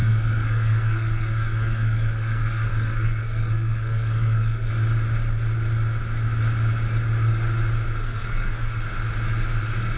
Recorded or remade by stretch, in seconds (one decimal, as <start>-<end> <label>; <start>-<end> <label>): 0.0-4.7 remade; 4.7-8.0 recorded; 8.0-8.7 remade; 8.7-10.0 recorded